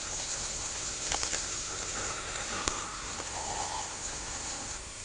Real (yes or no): no